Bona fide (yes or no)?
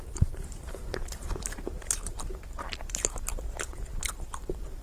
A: no